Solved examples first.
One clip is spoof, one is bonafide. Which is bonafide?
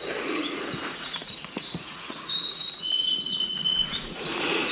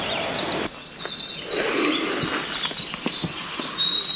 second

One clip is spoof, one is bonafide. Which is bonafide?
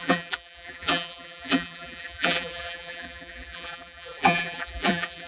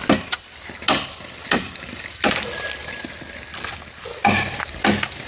second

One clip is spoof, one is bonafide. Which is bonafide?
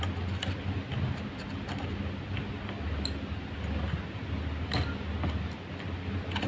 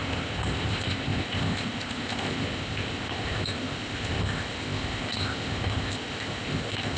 first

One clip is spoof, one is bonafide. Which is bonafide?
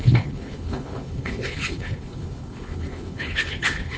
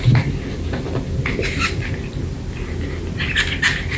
second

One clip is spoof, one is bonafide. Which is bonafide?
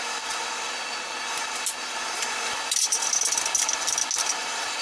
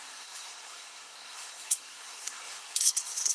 first